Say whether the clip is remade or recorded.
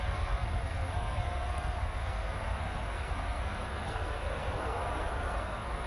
remade